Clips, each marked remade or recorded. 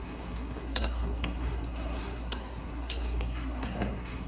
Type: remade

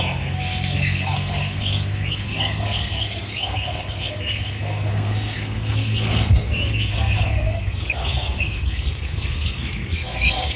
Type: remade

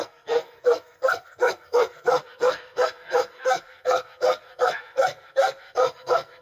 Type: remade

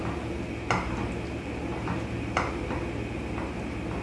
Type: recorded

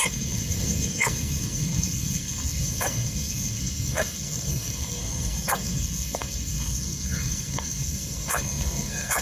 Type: remade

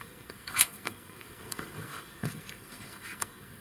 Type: remade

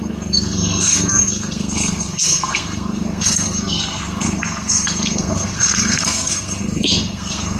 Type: remade